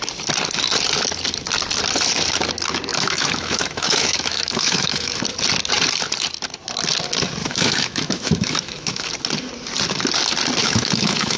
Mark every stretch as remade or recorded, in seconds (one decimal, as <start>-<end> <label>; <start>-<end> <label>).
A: 0.0-2.9 recorded; 2.9-5.2 remade; 5.2-7.4 recorded; 7.4-9.1 remade; 9.1-10.6 recorded; 10.6-11.4 remade